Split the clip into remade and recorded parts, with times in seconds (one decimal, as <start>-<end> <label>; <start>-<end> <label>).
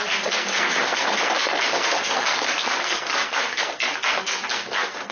0.0-5.1 remade